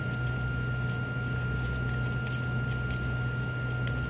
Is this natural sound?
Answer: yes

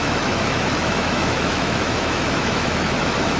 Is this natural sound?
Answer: no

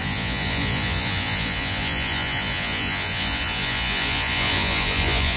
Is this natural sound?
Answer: no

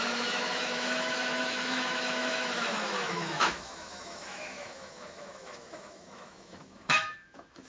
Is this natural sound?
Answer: no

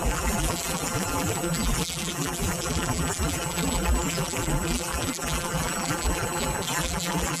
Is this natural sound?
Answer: no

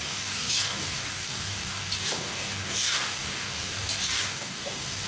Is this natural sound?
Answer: no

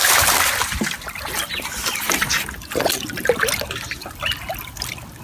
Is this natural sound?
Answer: yes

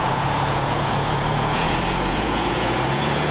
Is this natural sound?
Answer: no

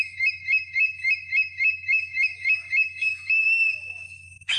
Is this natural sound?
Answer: no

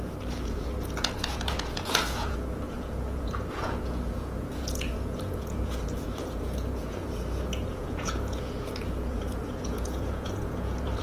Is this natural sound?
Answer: no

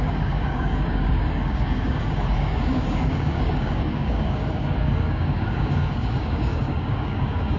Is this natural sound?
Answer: no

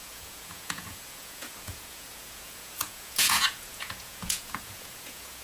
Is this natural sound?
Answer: no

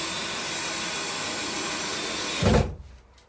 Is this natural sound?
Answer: yes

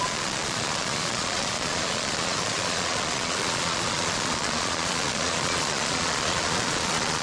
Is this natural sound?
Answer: no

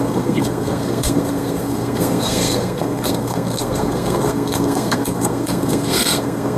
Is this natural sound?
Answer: no